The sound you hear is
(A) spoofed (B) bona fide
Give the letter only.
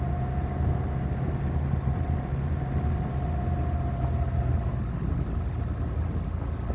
B